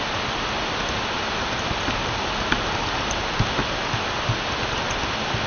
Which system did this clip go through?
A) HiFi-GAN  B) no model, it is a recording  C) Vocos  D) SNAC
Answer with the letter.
B